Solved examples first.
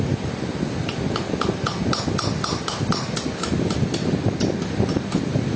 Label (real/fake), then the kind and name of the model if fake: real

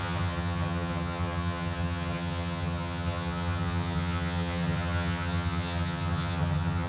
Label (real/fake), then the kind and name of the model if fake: fake, vocoder, HiFi-GAN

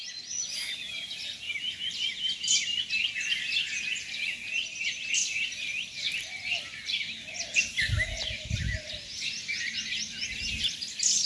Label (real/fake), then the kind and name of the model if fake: real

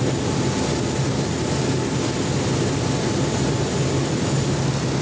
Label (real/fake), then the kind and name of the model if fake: real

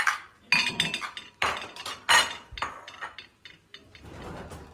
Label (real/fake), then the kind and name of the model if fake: real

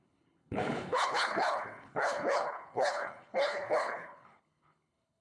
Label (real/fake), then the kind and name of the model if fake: fake, codec, HILCodec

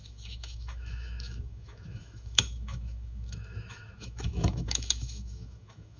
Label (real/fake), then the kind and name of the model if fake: fake, autoencoder, DAC-VAE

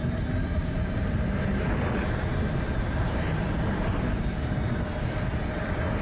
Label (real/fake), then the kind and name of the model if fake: real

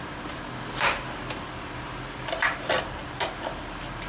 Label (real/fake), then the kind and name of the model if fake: real